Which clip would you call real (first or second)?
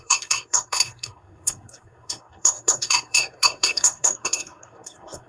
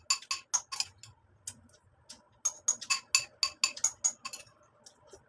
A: second